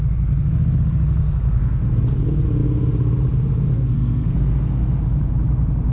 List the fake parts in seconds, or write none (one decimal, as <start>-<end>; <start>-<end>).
1.2-2.0; 3.7-5.0